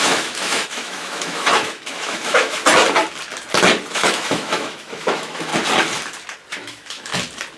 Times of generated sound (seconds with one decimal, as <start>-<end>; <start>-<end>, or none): 0.0-2.6; 3.9-5.5; 6.5-7.1